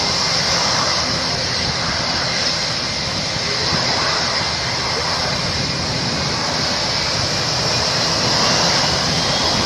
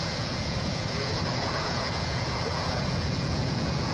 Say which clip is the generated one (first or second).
second